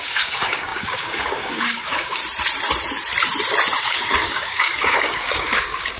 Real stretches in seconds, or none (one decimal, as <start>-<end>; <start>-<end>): 2.2-3.8